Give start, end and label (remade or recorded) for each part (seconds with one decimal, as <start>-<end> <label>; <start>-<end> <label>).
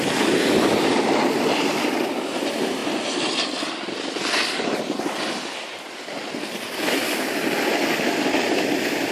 0.0-9.1 recorded